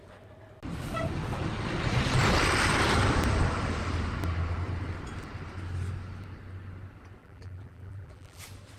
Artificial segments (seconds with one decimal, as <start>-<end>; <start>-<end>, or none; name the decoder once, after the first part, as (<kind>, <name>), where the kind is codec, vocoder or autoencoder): 7.2-8.4 (vocoder, BigVGAN v2)